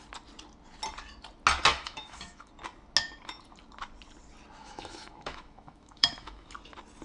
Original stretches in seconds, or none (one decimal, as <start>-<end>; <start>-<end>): 0.0-1.7; 2.5-4.6; 6.5-7.0

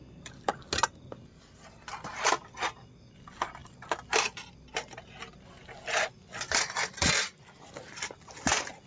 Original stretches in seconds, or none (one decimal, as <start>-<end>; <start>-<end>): 0.0-8.9

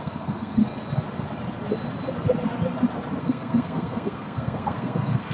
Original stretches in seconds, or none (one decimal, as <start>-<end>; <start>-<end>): 0.6-3.2

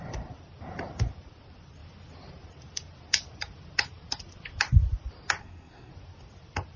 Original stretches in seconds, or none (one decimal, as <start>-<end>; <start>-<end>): 0.0-5.4; 5.9-6.8

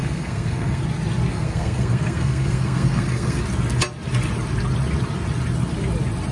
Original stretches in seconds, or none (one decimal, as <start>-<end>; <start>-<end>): 0.8-1.3; 3.4-6.3

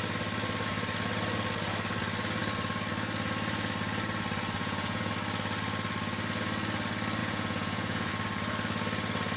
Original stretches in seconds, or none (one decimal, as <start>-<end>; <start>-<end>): 0.0-4.6; 5.1-7.2; 8.1-9.4

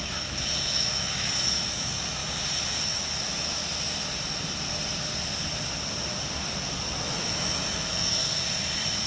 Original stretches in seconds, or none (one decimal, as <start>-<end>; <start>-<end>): 2.2-2.8; 3.6-7.0; 8.2-9.1

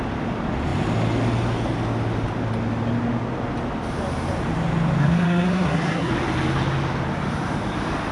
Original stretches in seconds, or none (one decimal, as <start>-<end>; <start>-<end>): 0.0-5.0; 6.1-8.1